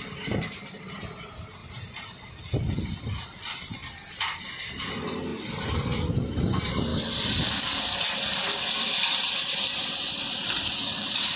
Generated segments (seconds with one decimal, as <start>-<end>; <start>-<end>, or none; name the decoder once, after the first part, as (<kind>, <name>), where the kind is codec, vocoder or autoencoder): 1.6-2.3 (vocoder, BigVGAN v2); 3.8-4.5; 5.3-6.3; 6.9-8.6

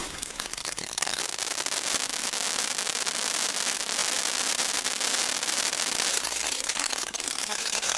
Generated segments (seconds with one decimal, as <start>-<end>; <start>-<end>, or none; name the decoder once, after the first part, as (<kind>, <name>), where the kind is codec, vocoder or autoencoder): 0.0-1.2 (codec, SNAC); 6.1-8.0

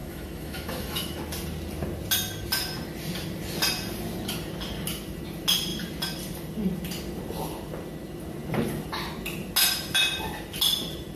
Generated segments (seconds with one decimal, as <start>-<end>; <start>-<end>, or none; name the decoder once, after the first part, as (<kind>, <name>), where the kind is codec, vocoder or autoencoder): 0.0-1.2 (autoencoder, DAC-VAE)

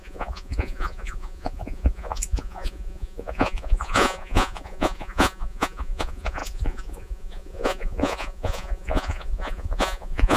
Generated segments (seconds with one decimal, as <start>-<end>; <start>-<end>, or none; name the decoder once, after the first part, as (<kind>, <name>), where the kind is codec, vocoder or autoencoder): 0.0-10.4 (vocoder, Vocos)

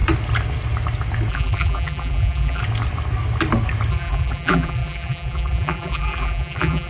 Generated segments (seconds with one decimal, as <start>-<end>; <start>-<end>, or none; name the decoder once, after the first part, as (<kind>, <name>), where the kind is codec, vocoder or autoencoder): 1.3-2.6 (vocoder, BigVGAN v2); 3.9-6.9

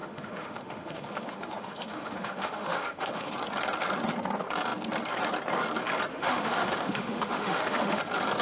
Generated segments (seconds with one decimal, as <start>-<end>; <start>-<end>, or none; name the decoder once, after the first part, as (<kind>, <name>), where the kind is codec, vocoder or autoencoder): 0.0-3.3 (autoencoder, DAC-VAE); 6.1-8.0